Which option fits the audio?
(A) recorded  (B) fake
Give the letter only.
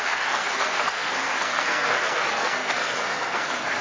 B